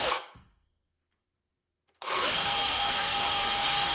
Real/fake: fake